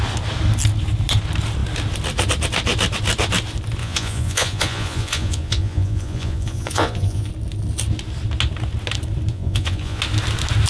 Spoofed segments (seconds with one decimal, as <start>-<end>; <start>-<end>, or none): 3.8-7.3; 9.3-10.0